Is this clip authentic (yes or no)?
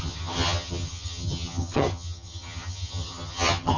no